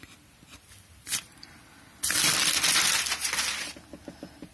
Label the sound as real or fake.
real